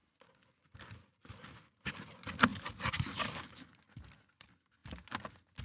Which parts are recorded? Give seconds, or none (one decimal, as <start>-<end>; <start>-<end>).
0.0-5.6